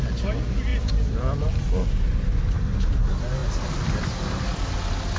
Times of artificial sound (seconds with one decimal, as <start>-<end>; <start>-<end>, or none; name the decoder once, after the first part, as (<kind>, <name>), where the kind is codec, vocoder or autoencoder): 0.7-1.5 (vocoder, BigVGAN v2); 3.4-4.4